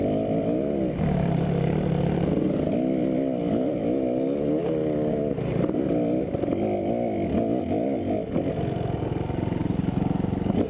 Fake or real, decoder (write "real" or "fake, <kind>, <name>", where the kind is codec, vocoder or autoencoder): real